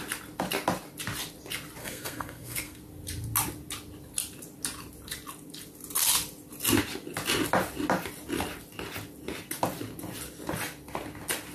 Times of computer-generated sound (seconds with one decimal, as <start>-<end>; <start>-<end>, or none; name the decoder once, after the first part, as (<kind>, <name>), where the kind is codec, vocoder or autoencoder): 1.8-2.8 (codec, SNAC)